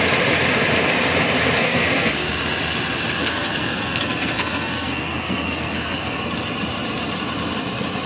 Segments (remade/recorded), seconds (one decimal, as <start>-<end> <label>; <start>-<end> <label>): 0.0-1.6 recorded; 1.6-2.3 remade; 2.3-3.2 recorded; 3.2-6.2 remade; 6.2-8.1 recorded